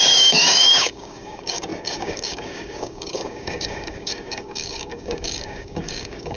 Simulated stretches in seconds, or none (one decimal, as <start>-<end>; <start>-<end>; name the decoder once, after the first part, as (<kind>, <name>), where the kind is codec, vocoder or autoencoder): 0.0-6.4 (codec, DAC)